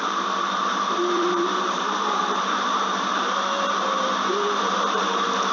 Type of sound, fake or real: fake